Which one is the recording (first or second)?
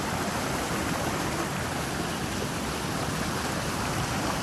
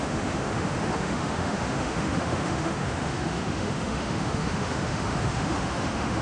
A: first